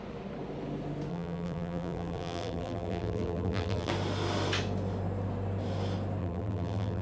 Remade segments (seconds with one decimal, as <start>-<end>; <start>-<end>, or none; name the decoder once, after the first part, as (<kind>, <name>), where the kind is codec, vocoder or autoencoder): 1.1-3.9 (vocoder, BigVGAN v2); 6.2-7.0

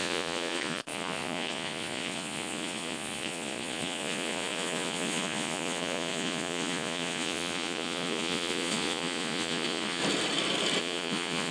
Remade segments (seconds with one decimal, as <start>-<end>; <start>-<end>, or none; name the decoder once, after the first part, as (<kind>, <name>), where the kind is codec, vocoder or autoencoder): 0.0-10.0 (vocoder, Vocos); 10.8-11.5